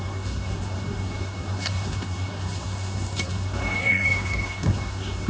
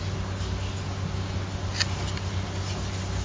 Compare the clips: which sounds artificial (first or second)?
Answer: first